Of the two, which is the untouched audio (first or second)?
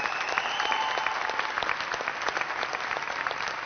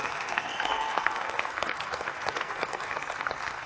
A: first